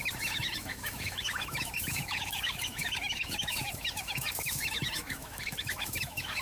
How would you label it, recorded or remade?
remade